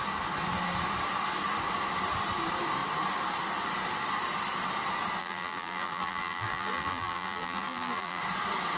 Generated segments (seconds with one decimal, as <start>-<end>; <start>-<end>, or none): 5.2-8.2